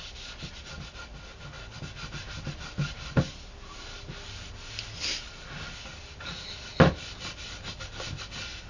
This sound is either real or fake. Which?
real